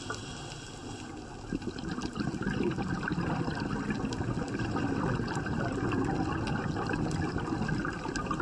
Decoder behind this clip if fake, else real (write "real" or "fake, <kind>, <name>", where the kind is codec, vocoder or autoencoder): real